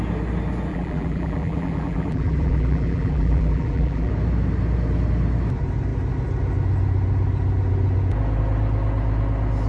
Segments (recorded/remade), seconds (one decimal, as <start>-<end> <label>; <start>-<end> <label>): 0.0-0.7 recorded; 0.7-4.1 remade; 4.1-9.7 recorded